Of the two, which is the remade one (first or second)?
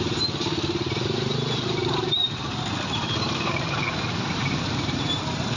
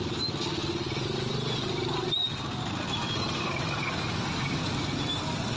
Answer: first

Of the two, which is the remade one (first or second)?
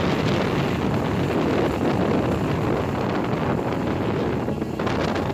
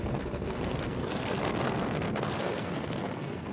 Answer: second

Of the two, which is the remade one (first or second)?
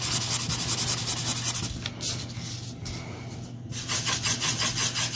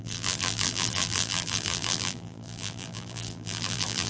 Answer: second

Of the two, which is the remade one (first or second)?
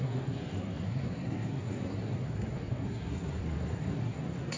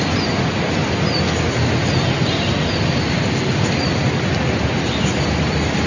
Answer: first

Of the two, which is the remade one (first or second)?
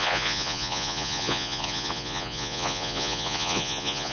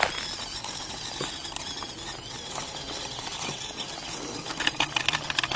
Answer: first